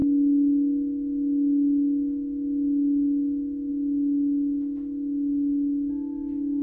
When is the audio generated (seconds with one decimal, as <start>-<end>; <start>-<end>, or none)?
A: 0.0-3.7